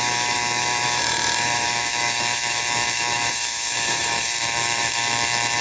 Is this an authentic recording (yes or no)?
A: no